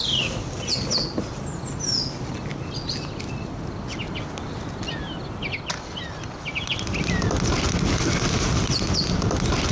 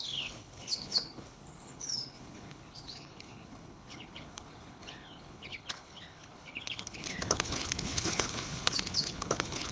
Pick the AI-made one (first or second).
second